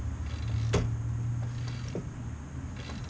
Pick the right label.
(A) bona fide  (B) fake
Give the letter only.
A